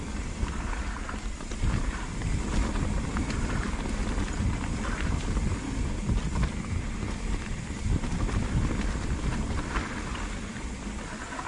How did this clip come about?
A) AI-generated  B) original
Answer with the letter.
A